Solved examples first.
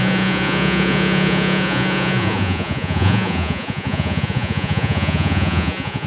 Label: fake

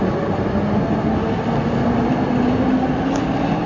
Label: real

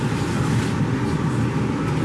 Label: real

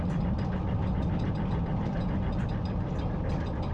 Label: real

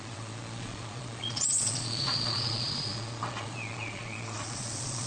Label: fake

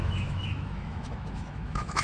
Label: fake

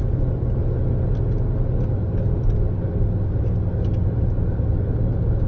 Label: real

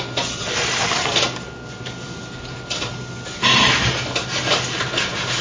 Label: real